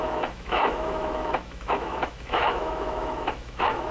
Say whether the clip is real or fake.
fake